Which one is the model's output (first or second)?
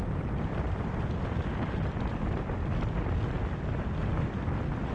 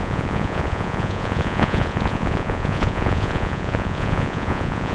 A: second